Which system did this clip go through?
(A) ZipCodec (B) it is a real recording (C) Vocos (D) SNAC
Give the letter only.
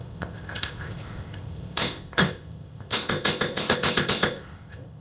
A